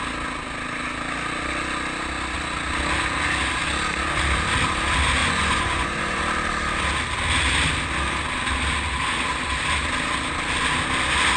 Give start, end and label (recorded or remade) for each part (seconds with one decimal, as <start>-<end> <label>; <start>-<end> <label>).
0.0-5.2 recorded; 5.2-6.2 remade; 6.2-11.4 recorded